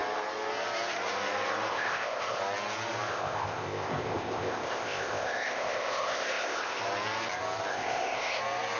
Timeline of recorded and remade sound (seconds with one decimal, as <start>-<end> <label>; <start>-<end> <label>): 0.0-1.7 recorded; 1.7-2.4 remade; 2.4-3.1 recorded; 3.1-6.8 remade; 6.8-7.7 recorded; 7.7-8.4 remade; 8.4-8.8 recorded